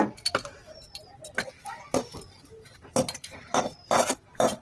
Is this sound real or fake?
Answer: fake